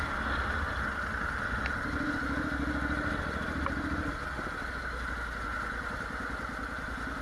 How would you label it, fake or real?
real